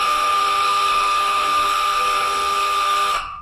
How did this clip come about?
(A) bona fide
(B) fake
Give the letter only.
B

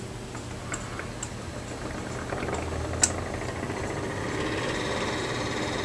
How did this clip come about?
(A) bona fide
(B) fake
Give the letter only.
A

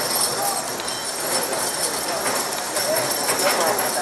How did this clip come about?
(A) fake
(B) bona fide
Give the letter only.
B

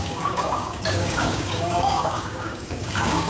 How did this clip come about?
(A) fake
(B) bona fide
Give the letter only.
A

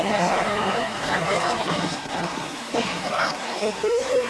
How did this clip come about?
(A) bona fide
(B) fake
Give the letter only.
B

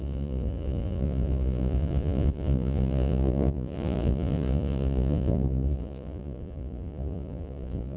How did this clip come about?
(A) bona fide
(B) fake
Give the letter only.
B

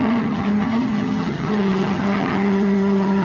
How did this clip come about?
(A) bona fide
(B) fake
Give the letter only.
B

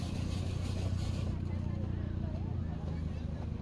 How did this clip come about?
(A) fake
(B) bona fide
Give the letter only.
B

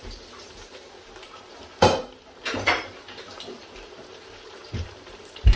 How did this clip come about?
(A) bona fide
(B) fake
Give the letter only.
B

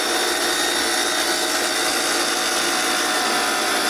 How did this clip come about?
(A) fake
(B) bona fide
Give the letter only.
B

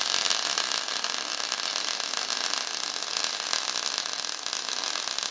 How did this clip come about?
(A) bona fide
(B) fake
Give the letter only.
A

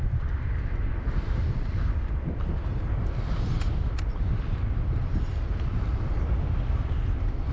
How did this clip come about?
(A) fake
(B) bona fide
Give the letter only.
B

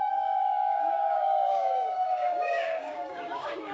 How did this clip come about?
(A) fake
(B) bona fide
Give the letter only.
A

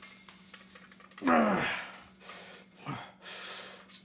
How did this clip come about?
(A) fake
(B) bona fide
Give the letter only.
B